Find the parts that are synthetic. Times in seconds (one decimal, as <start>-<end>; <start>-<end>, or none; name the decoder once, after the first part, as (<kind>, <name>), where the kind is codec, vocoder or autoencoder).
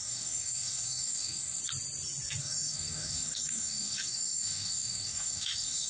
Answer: 0.0-1.6 (codec, DAC); 2.4-5.9